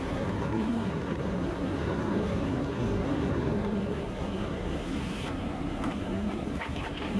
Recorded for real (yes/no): no